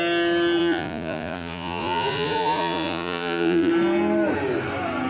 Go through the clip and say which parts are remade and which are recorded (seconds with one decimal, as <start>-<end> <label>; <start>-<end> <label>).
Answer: 0.0-0.6 recorded; 0.6-3.7 remade; 3.7-5.1 recorded